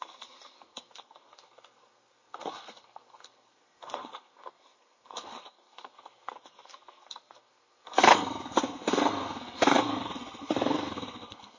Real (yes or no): no